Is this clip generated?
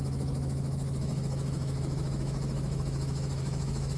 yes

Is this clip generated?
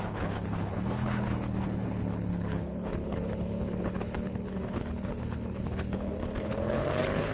yes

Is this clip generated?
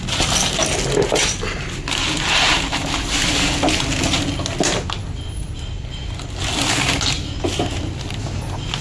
no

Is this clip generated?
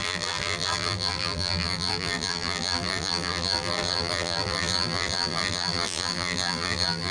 yes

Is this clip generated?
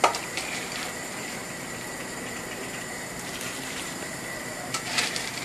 yes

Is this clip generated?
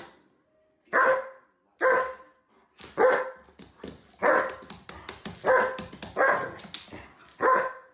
no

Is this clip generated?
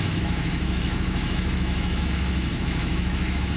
yes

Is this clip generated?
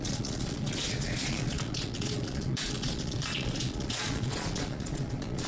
yes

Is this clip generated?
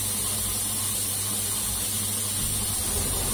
no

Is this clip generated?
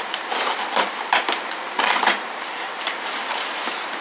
yes